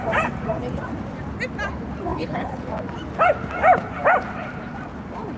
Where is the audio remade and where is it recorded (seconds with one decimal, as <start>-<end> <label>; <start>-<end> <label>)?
0.0-2.1 recorded; 2.1-2.7 remade; 2.7-5.4 recorded